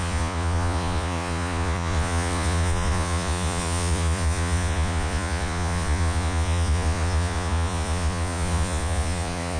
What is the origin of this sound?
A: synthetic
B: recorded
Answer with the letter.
A